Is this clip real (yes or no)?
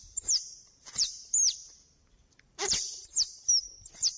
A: no